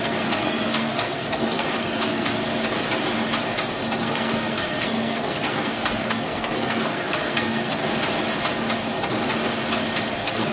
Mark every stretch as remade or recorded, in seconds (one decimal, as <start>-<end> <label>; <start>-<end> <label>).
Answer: 0.0-2.4 remade; 2.4-4.0 recorded; 4.0-7.8 remade; 7.8-10.1 recorded; 10.1-10.5 remade